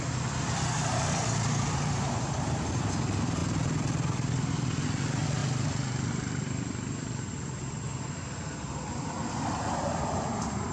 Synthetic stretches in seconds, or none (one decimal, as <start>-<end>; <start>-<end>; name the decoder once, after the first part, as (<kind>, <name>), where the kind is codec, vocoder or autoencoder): 0.0-10.7 (vocoder, BigVGAN v2)